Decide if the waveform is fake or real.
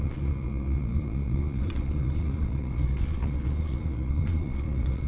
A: fake